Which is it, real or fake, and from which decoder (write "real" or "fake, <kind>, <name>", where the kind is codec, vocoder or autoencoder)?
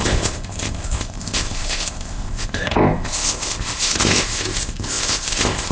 fake, codec, ZipCodec